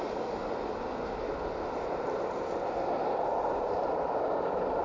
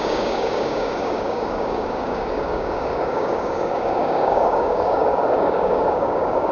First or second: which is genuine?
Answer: first